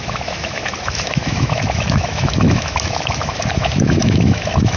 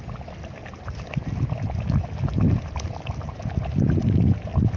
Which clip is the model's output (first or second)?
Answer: first